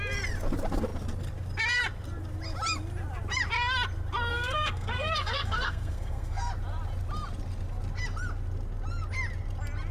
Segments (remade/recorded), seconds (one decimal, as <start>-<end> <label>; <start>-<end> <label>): 0.0-4.3 recorded; 4.3-6.5 remade; 6.5-9.9 recorded